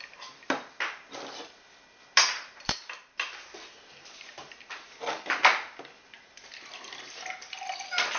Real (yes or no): yes